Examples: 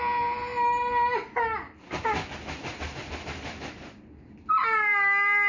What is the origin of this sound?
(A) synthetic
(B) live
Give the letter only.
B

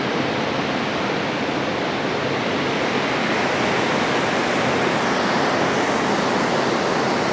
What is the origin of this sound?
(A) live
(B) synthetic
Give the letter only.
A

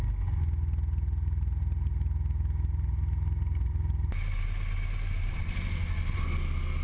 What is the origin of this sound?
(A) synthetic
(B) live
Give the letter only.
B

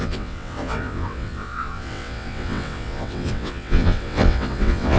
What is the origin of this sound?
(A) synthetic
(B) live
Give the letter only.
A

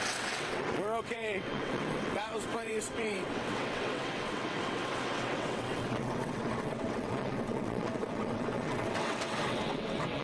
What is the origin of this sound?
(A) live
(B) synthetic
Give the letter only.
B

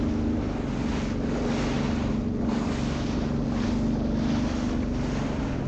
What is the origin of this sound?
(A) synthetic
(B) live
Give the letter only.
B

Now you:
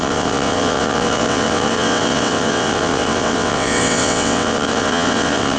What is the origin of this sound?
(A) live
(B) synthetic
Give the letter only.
B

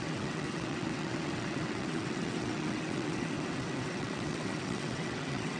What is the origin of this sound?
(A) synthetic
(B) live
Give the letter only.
A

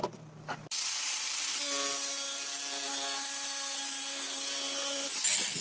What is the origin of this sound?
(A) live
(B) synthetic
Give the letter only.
A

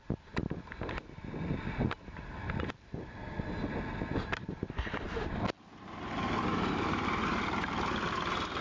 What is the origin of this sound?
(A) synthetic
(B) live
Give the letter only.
B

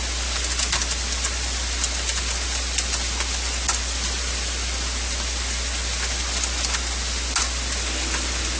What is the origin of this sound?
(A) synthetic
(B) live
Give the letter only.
B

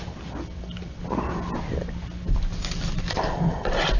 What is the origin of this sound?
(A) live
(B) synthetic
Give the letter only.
A